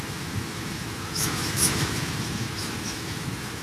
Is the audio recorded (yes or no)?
no